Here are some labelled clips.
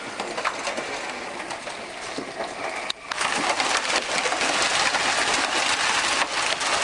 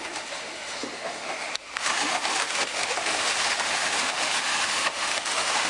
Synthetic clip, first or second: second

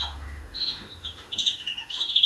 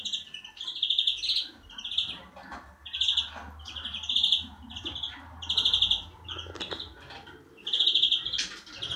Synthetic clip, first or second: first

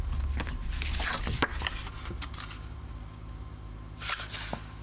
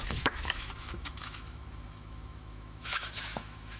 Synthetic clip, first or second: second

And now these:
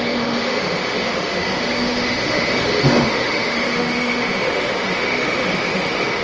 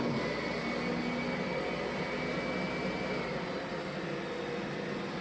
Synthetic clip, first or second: first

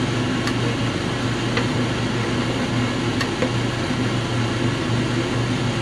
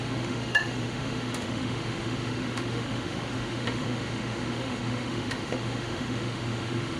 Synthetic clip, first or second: second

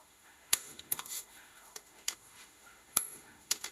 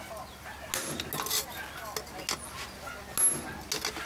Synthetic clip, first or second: first